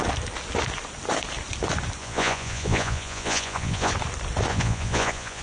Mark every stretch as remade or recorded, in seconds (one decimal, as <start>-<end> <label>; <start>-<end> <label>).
0.0-2.0 recorded; 2.0-3.9 remade; 3.9-4.5 recorded; 4.5-5.4 remade

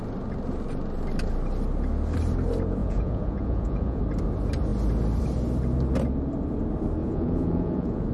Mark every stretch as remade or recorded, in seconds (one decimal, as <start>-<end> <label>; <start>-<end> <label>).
0.0-2.8 recorded; 2.8-4.0 remade; 4.0-7.0 recorded; 7.0-8.1 remade

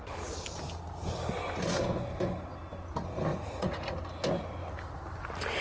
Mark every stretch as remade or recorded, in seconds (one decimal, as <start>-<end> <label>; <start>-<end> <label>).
0.0-3.3 recorded; 3.3-3.9 remade; 3.9-5.6 recorded

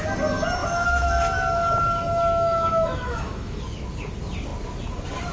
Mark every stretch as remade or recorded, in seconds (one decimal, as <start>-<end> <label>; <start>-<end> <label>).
0.0-0.6 recorded; 0.6-3.6 remade; 3.6-5.3 recorded